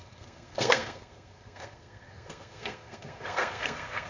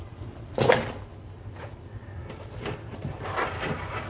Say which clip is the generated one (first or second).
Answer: first